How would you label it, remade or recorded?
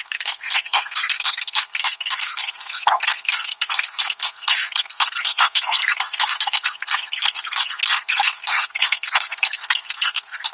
remade